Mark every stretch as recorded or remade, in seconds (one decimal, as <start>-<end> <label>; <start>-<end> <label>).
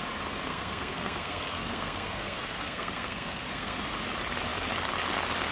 0.0-0.5 recorded; 0.5-3.8 remade; 3.8-5.5 recorded